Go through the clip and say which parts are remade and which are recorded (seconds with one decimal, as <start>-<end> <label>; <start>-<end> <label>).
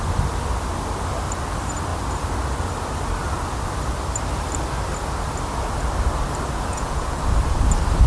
0.0-6.7 recorded; 6.7-7.2 remade; 7.2-8.1 recorded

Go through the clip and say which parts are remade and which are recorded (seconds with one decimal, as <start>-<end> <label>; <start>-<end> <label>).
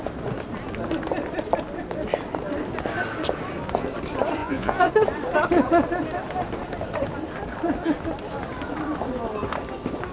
0.0-4.4 recorded; 4.4-4.9 remade; 4.9-10.1 recorded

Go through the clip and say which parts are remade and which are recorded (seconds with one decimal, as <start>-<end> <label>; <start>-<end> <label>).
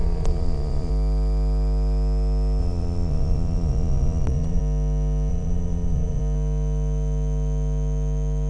0.0-0.9 remade; 0.9-2.6 recorded; 2.6-4.6 remade; 4.6-5.3 recorded; 5.3-6.2 remade; 6.2-8.5 recorded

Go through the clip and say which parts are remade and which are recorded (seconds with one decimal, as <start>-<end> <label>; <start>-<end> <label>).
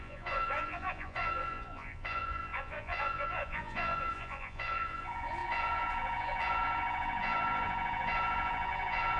0.0-9.2 remade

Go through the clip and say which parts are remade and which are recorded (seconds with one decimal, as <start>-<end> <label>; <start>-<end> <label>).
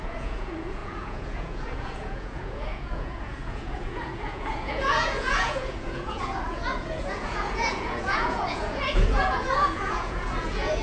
0.0-10.8 remade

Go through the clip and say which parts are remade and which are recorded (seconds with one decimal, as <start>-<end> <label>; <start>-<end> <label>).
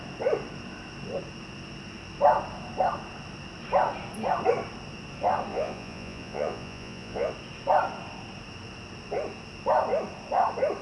0.0-5.5 recorded; 5.5-7.3 remade; 7.3-10.8 recorded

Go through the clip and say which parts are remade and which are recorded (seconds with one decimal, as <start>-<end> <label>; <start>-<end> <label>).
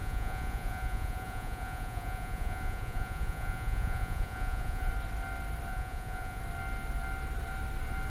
0.0-4.9 remade; 4.9-5.7 recorded; 5.7-6.4 remade; 6.4-8.1 recorded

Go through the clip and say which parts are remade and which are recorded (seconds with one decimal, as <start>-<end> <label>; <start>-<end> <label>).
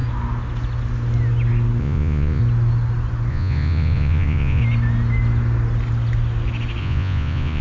0.0-1.8 recorded; 1.8-2.4 remade; 2.4-3.3 recorded; 3.3-4.6 remade; 4.6-6.8 recorded; 6.8-7.6 remade